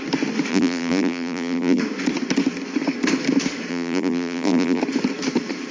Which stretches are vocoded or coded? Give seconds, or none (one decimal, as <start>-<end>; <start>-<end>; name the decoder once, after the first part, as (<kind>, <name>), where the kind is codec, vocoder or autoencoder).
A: 0.5-1.8 (vocoder, BigVGAN v2); 3.7-4.8